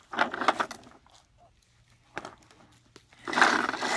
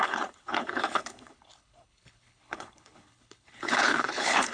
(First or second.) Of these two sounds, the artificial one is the second